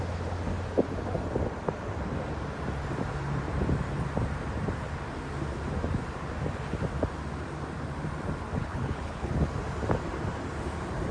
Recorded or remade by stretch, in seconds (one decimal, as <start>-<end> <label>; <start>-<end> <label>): 0.0-8.6 recorded; 8.6-9.3 remade; 9.3-11.1 recorded